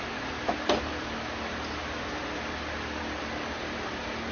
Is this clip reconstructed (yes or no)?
no